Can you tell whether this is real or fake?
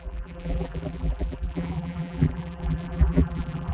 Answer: fake